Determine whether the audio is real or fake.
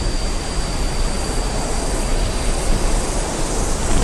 real